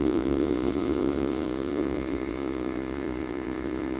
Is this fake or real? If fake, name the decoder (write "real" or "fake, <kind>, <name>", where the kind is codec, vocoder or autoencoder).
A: fake, vocoder, Vocos